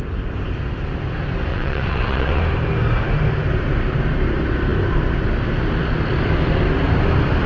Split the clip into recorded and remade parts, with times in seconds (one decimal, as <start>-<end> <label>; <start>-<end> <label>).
0.0-1.5 recorded; 1.5-2.4 remade; 2.4-7.5 recorded